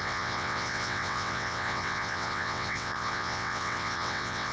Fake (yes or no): yes